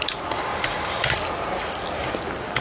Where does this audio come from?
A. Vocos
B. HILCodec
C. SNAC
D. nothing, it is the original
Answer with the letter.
D